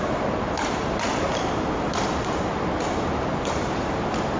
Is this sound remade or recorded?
recorded